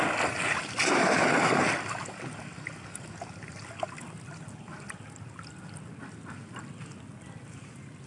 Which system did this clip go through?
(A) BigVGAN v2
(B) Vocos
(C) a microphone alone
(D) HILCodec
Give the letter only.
C